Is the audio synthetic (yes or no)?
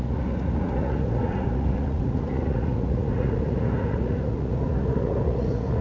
yes